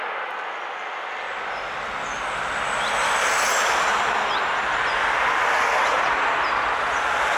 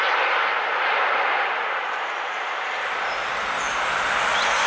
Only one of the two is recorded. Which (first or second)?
first